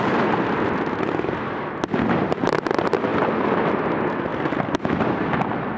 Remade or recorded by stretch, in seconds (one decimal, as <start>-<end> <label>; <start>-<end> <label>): 0.0-4.3 recorded; 4.3-5.1 remade; 5.1-5.8 recorded